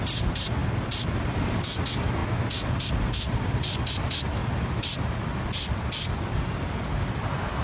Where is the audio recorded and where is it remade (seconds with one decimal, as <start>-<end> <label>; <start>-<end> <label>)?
0.0-7.6 recorded